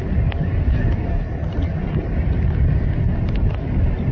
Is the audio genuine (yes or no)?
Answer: yes